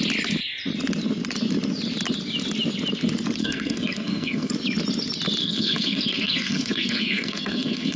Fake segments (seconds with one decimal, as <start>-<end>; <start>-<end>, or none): 3.4-4.5; 5.4-8.0